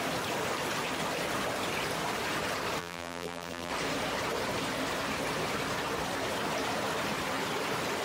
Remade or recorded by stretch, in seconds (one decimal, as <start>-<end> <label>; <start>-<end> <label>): 0.0-2.8 recorded; 2.8-3.7 remade; 3.7-8.0 recorded